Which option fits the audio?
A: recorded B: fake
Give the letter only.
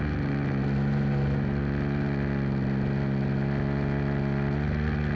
A